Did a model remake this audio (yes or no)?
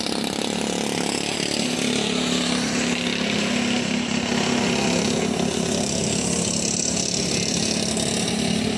no